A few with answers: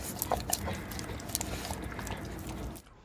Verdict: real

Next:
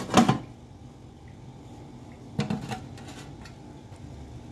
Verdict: real